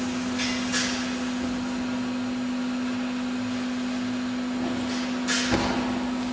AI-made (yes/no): no